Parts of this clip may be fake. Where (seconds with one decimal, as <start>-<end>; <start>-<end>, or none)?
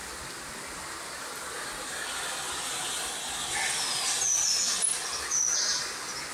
none